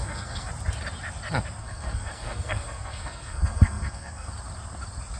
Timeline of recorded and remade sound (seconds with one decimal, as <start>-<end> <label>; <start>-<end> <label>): 0.0-0.5 remade; 0.5-1.6 recorded; 1.6-4.3 remade; 4.3-5.2 recorded